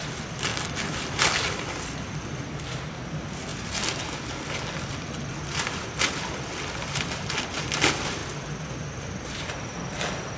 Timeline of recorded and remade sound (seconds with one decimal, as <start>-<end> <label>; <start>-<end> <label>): 0.0-10.4 recorded